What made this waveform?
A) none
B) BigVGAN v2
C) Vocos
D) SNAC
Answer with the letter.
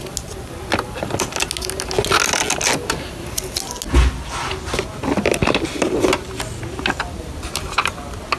A